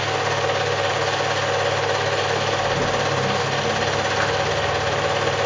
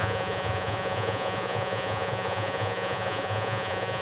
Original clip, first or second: first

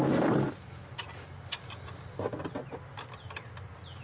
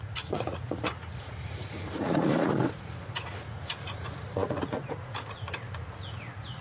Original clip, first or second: first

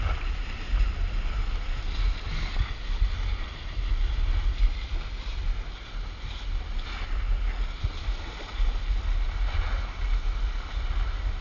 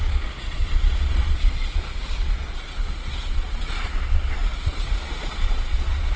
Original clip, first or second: first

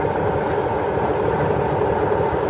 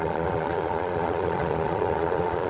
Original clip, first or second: first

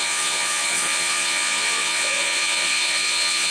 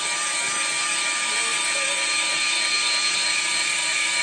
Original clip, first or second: second